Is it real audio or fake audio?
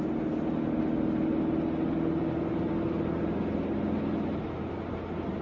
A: real